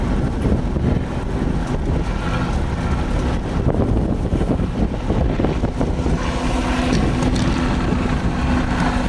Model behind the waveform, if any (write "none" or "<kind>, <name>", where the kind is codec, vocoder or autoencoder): none